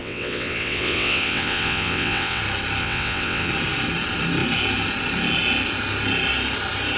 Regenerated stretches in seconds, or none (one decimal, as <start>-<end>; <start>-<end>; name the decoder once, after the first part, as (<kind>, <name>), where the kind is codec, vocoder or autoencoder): 0.0-2.4 (vocoder, WaveNeXt); 2.8-3.5